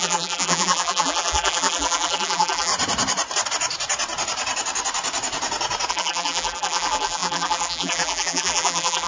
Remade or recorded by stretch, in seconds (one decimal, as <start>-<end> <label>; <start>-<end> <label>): 0.0-2.7 remade; 2.7-5.9 recorded; 5.9-9.1 remade